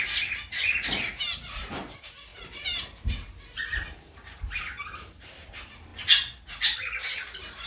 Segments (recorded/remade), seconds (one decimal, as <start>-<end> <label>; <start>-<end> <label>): 0.0-7.7 recorded